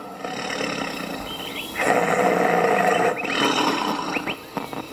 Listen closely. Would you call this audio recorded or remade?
recorded